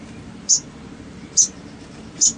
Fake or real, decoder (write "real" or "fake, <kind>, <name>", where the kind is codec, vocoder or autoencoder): fake, vocoder, BigVGAN v2